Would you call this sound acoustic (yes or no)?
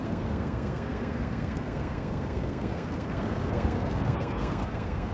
no